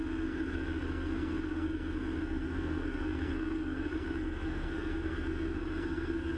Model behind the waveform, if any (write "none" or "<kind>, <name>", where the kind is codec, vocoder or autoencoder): codec, SNAC